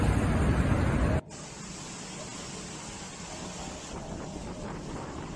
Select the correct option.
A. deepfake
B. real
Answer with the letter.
B